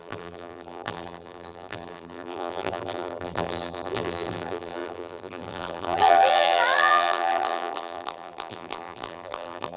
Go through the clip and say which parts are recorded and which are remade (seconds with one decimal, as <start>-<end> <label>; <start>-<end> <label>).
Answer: 0.0-9.8 remade